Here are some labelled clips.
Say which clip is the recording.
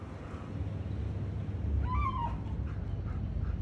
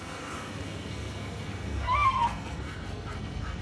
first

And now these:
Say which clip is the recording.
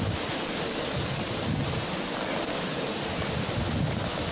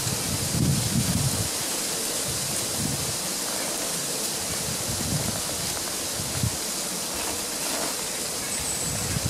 second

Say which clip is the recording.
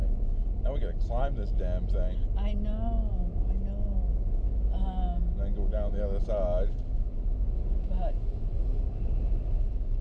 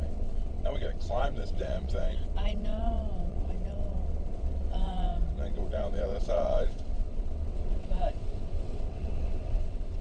first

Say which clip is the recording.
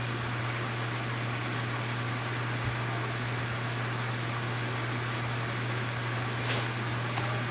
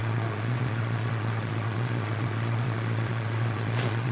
first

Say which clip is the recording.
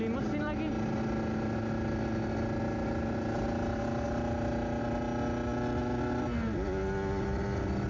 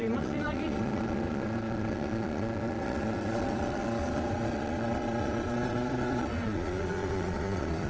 first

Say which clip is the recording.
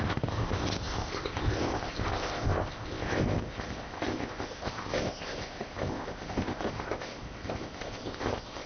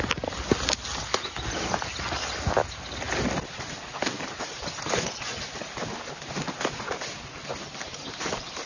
second